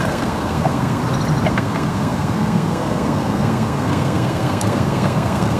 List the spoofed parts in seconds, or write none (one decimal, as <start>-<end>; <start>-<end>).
0.0-1.0; 1.5-5.6